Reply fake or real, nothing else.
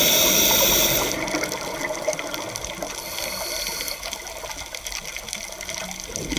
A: real